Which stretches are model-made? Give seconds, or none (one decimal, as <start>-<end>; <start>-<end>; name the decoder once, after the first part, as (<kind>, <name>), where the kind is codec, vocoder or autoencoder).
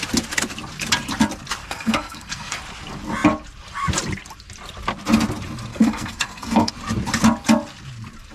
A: 1.6-2.6 (codec, SNAC); 5.7-6.7